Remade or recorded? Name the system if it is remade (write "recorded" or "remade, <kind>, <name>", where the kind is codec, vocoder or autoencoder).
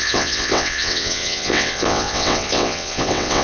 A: remade, vocoder, WaveNeXt